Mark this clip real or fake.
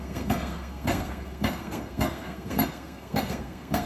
fake